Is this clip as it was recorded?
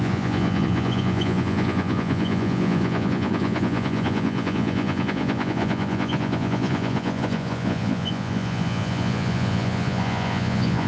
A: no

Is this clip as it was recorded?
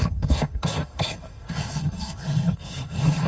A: no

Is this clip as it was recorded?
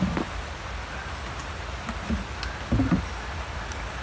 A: yes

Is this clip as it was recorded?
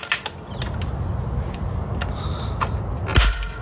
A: yes